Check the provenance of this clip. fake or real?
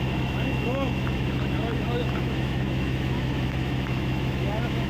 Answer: fake